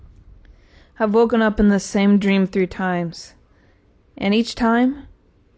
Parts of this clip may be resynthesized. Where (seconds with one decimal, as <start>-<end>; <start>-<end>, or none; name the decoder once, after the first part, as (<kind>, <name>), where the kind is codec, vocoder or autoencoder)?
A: none